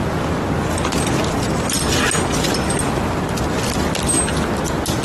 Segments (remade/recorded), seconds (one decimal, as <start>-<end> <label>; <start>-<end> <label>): 0.0-5.0 recorded